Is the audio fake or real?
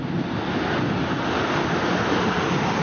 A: real